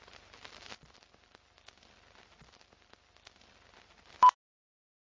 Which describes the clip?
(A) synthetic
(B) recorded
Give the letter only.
B